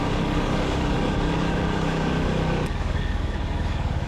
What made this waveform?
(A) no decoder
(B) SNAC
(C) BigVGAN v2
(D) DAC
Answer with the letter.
D